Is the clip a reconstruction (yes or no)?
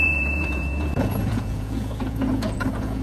yes